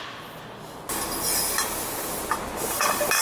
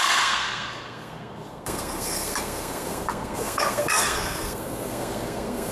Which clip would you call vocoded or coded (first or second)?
second